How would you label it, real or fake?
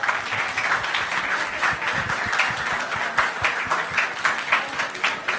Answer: real